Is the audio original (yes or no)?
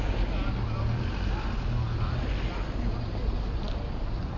yes